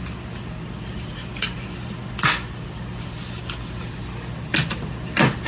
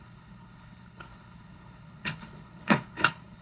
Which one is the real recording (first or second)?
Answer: first